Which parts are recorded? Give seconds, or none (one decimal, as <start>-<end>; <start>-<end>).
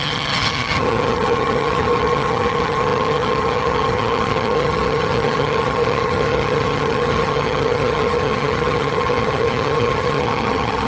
none